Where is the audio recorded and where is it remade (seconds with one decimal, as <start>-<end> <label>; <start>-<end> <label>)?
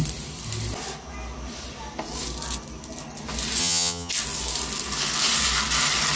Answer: 0.0-3.6 recorded; 3.6-4.1 remade; 4.1-6.2 recorded